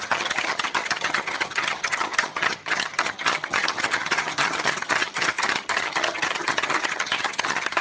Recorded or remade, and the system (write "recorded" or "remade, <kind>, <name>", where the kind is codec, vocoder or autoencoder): remade, vocoder, HiFi-GAN